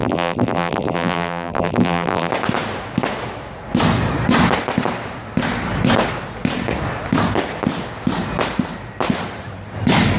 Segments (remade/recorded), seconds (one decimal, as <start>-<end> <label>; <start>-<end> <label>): 0.0-2.3 remade; 2.3-10.2 recorded